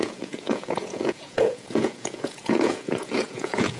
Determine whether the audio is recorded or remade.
remade